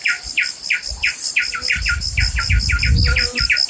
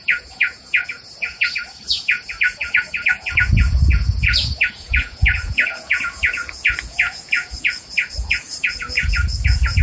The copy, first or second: second